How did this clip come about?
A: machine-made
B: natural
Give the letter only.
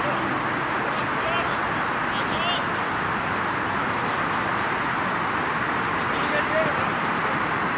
B